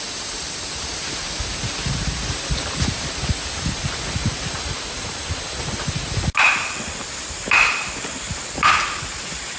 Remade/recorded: recorded